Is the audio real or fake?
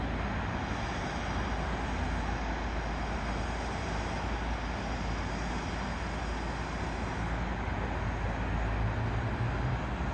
real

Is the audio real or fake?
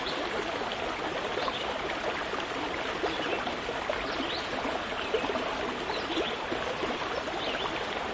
real